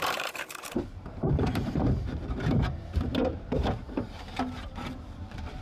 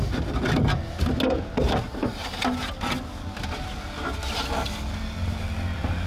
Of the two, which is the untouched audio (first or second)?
second